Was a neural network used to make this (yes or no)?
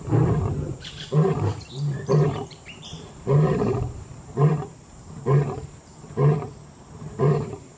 yes